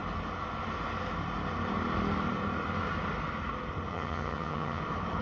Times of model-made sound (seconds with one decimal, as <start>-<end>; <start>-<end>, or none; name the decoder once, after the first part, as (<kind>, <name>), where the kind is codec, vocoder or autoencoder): 3.9-4.8 (vocoder, HiFi-GAN)